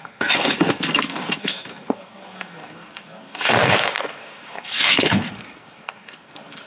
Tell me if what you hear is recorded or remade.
remade